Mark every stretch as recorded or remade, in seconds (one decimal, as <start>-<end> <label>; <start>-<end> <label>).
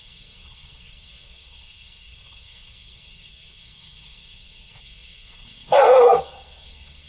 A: 0.0-7.1 remade